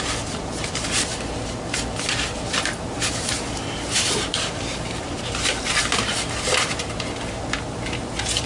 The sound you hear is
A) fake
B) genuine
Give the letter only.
A